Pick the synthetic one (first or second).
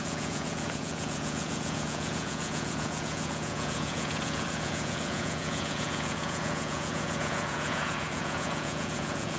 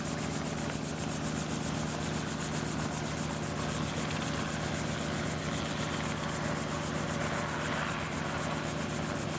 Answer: first